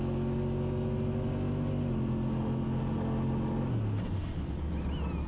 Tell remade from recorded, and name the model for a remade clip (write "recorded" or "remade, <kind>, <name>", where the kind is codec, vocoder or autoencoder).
recorded